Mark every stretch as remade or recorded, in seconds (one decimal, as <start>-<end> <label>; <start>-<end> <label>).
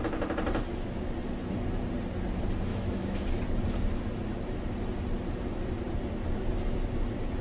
0.0-2.7 recorded; 2.7-3.3 remade; 3.3-7.4 recorded